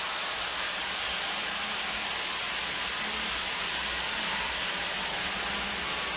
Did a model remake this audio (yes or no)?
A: no